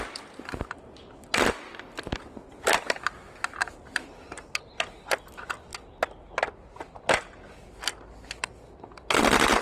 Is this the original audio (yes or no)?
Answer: yes